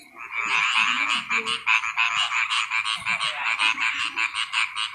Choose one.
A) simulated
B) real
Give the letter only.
B